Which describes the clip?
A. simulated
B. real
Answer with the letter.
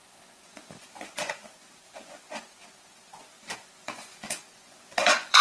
A